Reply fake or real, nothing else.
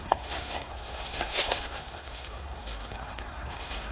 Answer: fake